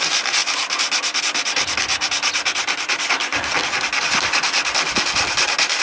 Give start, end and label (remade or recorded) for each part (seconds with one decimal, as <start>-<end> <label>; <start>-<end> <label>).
0.0-5.8 remade